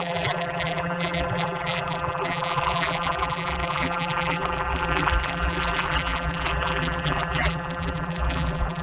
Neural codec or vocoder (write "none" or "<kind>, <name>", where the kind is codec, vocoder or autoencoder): vocoder, BigVGAN v2